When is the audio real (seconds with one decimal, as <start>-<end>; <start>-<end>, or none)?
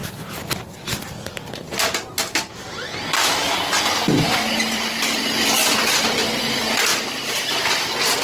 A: 0.0-3.4; 6.2-6.9; 7.5-8.2